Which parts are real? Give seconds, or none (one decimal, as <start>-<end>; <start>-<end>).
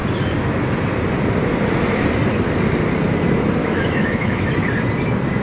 0.0-3.6; 4.5-5.4